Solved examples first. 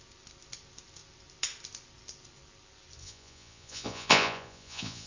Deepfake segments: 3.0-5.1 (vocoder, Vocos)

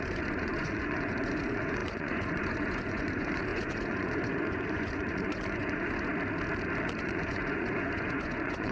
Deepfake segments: 0.0-6.1 (vocoder, Vocos); 7.0-8.7

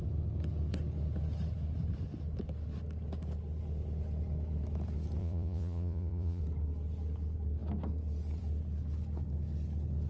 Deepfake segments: 5.2-6.4 (vocoder, Vocos)

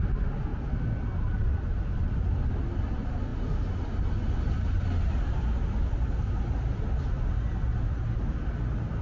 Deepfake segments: none

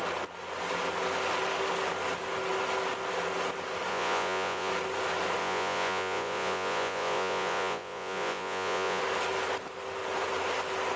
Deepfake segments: 3.9-4.7 (vocoder, Vocos); 5.4-9.0

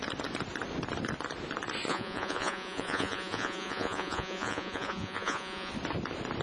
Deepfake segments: 1.9-5.7 (vocoder, Vocos)

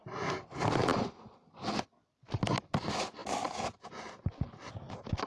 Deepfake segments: none

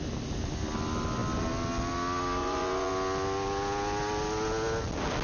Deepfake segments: 2.4-2.9 (vocoder, Vocos)